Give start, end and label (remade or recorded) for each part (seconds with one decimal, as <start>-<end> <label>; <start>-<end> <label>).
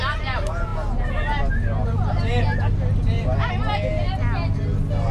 0.0-5.1 recorded